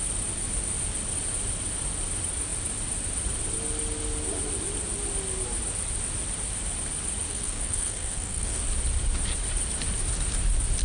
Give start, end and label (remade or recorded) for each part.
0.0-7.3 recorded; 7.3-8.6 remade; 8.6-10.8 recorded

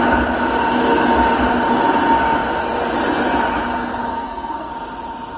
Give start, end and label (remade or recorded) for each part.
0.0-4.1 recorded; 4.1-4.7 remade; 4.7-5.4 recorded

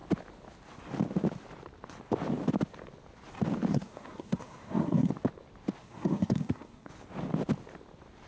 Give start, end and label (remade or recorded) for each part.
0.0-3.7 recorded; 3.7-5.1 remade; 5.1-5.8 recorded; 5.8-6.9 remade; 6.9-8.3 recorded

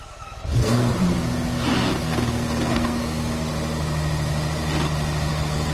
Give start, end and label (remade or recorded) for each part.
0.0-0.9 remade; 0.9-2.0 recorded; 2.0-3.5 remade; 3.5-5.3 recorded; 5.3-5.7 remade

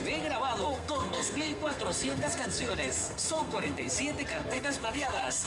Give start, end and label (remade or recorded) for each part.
0.0-0.6 recorded; 0.6-3.9 remade; 3.9-4.3 recorded; 4.3-5.5 remade

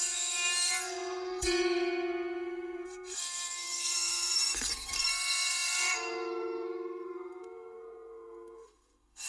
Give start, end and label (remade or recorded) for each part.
0.0-9.3 remade